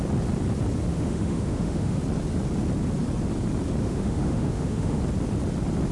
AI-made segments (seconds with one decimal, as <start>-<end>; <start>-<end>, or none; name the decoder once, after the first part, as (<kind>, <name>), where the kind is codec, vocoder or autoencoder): 0.9-2.0 (autoencoder, DAC-VAE); 3.8-5.0